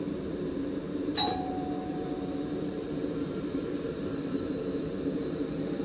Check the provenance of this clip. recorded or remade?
remade